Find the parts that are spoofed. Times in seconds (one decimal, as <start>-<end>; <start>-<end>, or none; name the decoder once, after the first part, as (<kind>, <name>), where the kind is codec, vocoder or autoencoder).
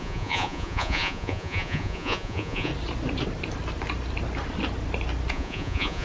0.0-2.7 (vocoder, Vocos); 5.3-6.0